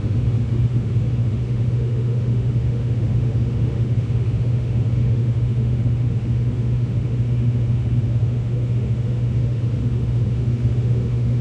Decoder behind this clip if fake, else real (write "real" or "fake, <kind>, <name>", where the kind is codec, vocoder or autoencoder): fake, autoencoder, DAC-VAE